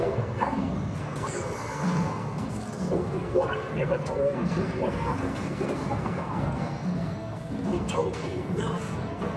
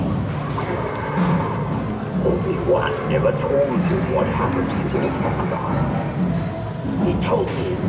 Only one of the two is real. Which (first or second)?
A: second